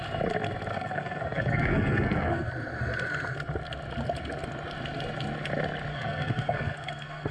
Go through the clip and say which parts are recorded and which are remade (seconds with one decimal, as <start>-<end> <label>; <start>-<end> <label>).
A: 0.0-0.7 recorded; 0.7-2.5 remade; 2.5-5.9 recorded; 5.9-7.3 remade